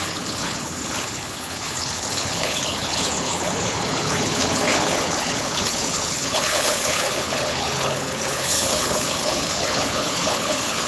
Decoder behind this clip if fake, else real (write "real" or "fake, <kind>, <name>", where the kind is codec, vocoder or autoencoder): fake, codec, HILCodec